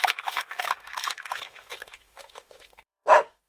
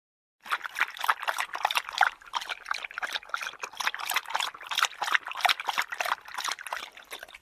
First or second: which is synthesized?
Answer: first